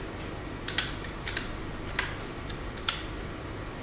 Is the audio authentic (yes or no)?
yes